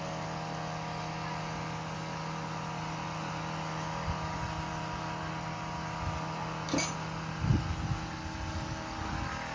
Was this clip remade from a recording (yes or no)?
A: no